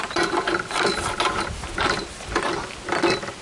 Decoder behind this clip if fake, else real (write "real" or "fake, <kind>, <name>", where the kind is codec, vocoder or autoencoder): real